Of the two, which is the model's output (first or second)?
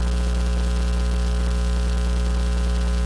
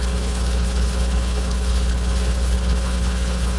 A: second